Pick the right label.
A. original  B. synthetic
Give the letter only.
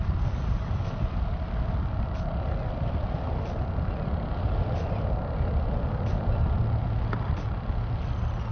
A